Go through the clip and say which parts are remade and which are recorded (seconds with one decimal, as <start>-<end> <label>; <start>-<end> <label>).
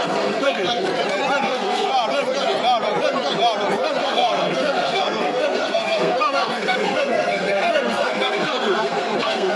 0.0-0.9 remade; 0.9-1.4 recorded; 1.4-1.9 remade; 1.9-4.0 recorded; 4.0-9.6 remade